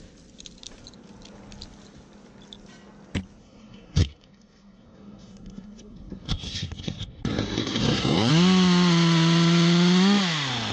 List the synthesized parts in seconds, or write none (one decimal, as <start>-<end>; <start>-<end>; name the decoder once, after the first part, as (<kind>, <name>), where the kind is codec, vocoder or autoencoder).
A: 3.4-8.3 (codec, SNAC)